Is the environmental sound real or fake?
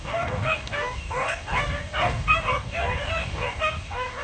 fake